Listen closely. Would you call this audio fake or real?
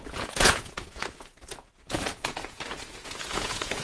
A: fake